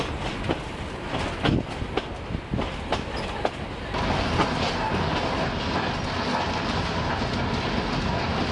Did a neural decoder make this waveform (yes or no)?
no